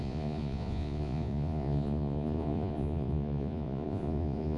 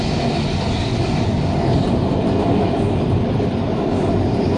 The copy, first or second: first